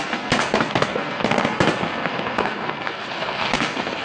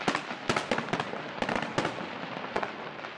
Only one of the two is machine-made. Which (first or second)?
first